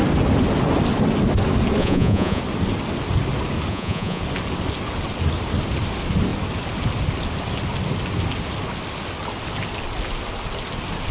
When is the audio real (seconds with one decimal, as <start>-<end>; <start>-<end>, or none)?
0.0-1.8; 2.4-3.7; 4.2-11.1